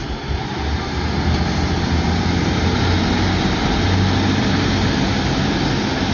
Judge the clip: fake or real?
real